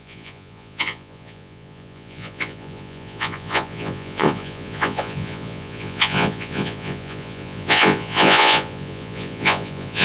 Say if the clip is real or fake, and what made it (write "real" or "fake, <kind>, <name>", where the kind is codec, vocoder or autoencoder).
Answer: fake, vocoder, Vocos